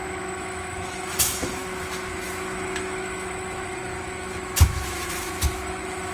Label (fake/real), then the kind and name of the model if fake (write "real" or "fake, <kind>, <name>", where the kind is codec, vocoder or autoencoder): fake, autoencoder, DAC-VAE